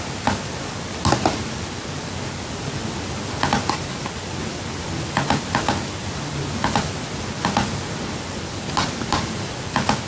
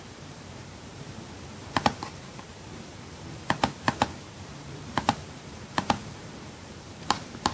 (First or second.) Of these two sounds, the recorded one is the first